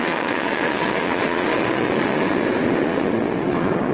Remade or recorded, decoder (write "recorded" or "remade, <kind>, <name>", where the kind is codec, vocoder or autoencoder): remade, vocoder, Vocos